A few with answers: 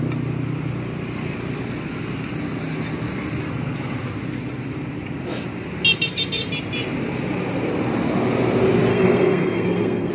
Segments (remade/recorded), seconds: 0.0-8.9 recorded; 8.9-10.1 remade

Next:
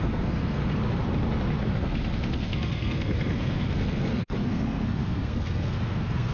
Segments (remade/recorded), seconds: 0.0-0.6 remade; 0.6-1.7 recorded; 1.7-6.3 remade

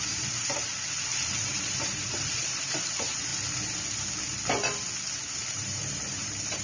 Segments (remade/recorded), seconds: 0.0-0.7 remade; 0.7-1.4 recorded; 1.4-3.3 remade; 3.3-5.5 recorded; 5.5-6.6 remade

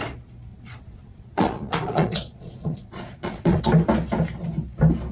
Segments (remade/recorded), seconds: 0.0-0.5 recorded; 0.5-3.6 remade; 3.6-5.1 recorded

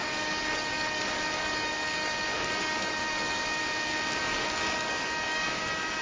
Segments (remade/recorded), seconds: 0.0-3.6 remade; 3.6-4.2 recorded; 4.2-6.0 remade